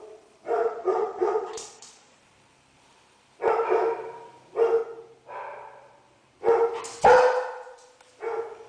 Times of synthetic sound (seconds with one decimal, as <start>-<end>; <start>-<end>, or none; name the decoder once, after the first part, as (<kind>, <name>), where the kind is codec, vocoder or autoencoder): 0.6-2.2 (vocoder, Vocos)